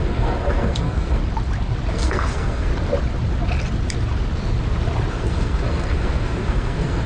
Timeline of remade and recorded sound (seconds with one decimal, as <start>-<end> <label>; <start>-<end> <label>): 0.0-1.2 remade; 1.2-1.9 recorded; 1.9-2.7 remade; 2.7-5.1 recorded; 5.1-7.1 remade

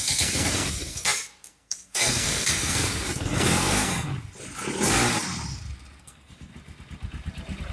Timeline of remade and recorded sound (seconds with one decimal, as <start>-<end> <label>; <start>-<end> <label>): 0.0-4.1 remade; 4.1-6.0 recorded; 6.0-6.5 remade; 6.5-7.7 recorded